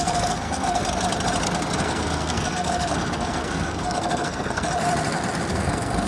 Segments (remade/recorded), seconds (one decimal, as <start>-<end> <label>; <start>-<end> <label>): 0.0-0.8 remade; 0.8-1.8 recorded; 1.8-4.7 remade; 4.7-5.5 recorded; 5.5-6.1 remade